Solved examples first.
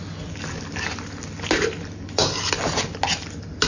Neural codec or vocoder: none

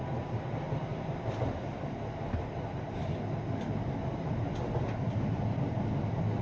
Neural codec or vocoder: none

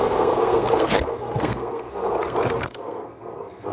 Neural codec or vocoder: codec, SNAC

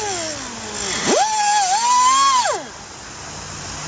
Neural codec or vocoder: none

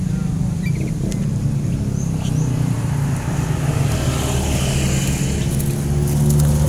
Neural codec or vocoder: none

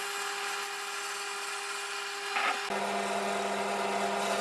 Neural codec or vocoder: none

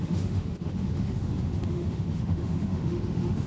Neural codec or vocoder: autoencoder, DAC-VAE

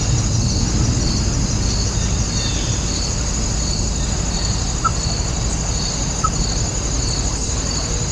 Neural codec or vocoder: none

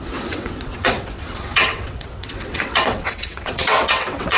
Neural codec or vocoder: vocoder, WaveNeXt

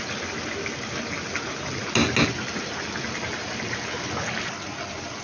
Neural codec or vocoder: none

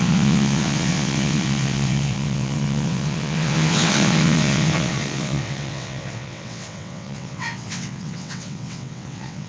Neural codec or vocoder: vocoder, WaveNeXt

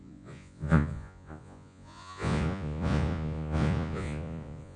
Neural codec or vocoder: vocoder, Vocos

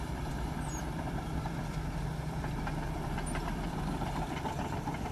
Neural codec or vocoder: vocoder, BigVGAN v2